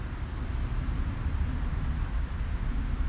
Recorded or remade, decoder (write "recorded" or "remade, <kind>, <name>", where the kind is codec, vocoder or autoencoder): recorded